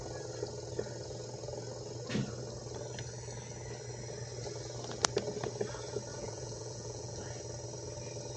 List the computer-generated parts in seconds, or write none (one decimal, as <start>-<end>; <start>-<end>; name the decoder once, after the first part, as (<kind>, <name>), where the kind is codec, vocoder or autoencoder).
6.1-7.2 (vocoder, Vocos)

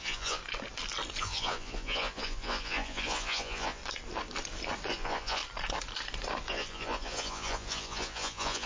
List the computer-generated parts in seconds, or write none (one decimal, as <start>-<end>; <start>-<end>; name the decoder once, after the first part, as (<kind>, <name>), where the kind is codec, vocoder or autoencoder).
0.0-0.4 (vocoder, Vocos); 1.2-3.8; 4.9-5.4; 6.5-8.7

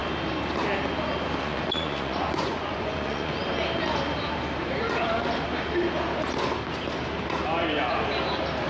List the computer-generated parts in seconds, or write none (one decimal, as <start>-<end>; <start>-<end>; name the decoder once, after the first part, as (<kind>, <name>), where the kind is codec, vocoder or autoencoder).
1.4-3.4 (vocoder, Vocos)

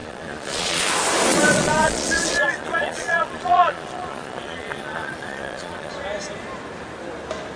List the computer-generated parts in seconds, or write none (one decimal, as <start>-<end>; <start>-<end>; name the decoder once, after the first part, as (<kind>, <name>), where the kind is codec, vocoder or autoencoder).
0.0-0.9 (vocoder, Vocos); 1.3-5.9